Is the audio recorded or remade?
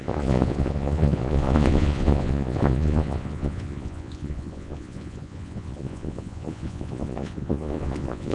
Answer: remade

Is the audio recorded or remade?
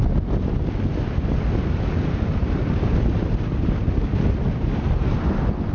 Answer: recorded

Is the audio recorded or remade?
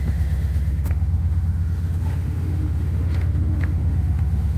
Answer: remade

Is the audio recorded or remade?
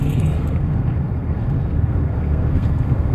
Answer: remade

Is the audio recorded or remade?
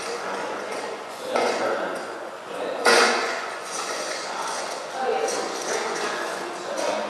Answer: remade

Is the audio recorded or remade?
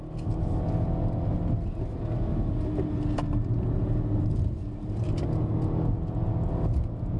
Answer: recorded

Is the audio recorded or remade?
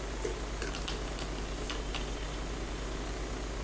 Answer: recorded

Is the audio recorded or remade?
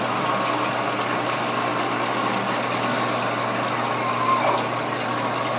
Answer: recorded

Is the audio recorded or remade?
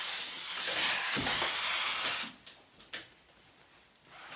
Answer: recorded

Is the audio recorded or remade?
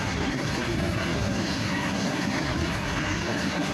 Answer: remade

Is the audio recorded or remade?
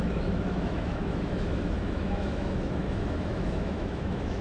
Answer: remade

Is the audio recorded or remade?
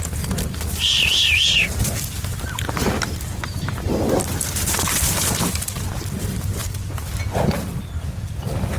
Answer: recorded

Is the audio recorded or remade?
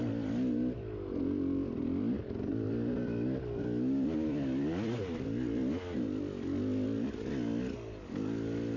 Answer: recorded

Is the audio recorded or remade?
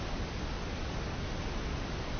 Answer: recorded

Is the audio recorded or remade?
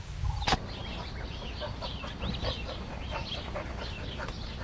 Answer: recorded